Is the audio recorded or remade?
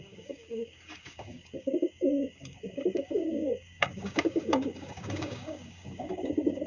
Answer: remade